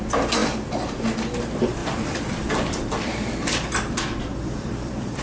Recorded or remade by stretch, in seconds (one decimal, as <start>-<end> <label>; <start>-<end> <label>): 0.0-1.8 recorded; 1.8-5.2 remade